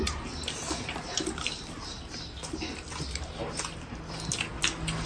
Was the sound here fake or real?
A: real